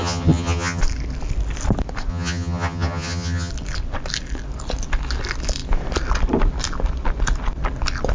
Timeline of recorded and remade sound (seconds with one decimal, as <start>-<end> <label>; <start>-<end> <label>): 0.0-0.8 remade; 0.8-2.1 recorded; 2.1-3.5 remade; 3.5-8.1 recorded